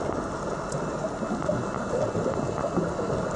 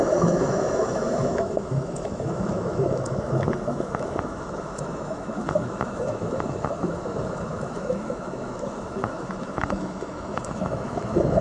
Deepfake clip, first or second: second